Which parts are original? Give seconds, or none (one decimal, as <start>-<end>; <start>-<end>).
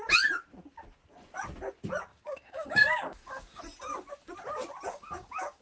0.0-2.1; 3.6-4.9